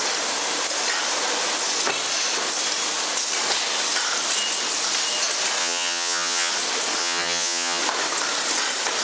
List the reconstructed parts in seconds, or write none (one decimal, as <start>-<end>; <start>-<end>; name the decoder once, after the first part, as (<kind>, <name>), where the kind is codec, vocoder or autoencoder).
5.6-6.5 (vocoder, HiFi-GAN); 7.0-7.8